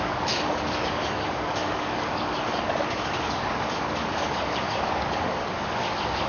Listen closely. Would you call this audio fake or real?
fake